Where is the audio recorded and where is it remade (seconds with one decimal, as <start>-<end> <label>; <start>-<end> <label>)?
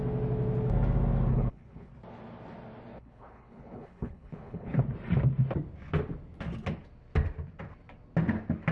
0.0-1.3 recorded; 1.3-1.9 remade; 1.9-2.9 recorded; 2.9-4.8 remade; 4.8-8.7 recorded